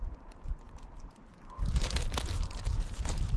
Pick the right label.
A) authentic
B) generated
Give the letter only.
B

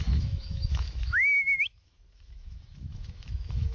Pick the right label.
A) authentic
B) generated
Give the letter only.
B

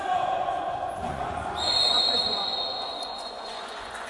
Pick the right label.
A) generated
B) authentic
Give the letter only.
A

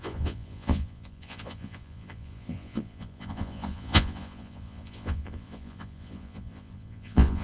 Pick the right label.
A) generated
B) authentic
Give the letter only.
A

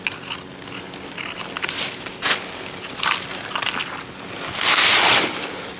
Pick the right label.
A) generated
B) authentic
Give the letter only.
B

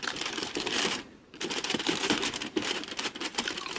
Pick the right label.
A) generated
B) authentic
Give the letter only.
A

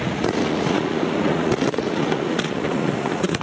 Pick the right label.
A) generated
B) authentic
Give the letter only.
A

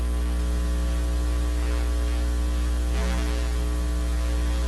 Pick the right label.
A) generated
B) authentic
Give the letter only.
B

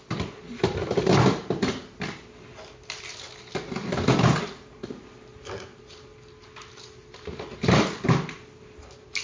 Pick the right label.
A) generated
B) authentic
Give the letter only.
B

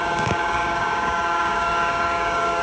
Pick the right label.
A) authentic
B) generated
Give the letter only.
B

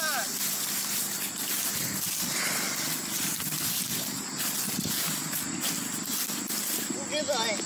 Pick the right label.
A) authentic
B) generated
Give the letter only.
A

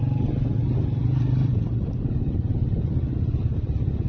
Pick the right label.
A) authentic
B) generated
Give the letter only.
A